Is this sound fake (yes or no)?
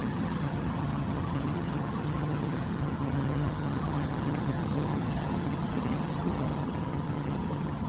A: yes